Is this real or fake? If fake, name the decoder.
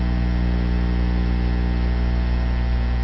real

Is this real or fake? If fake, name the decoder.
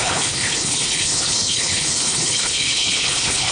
fake, codec, HILCodec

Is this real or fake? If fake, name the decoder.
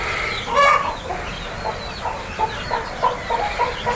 real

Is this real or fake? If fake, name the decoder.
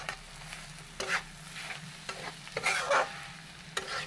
real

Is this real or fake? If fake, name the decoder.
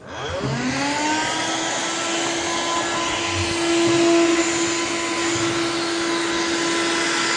real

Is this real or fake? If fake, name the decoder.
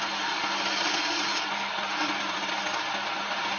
real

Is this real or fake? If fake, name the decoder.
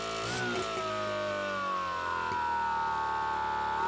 real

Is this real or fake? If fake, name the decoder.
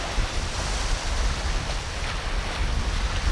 real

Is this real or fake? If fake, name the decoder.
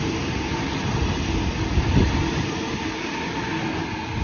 real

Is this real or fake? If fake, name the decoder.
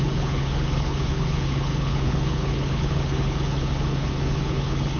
fake, codec, HILCodec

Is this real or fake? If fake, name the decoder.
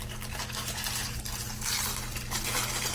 real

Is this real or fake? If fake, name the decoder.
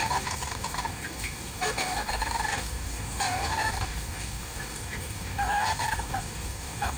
fake, codec, DAC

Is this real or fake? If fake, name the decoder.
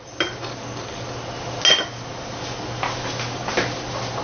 real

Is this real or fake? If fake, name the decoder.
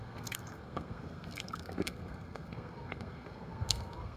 fake, codec, SNAC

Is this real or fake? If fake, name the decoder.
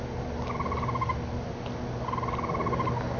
real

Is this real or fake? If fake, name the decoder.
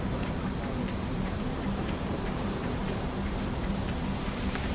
fake, vocoder, BigVGAN v2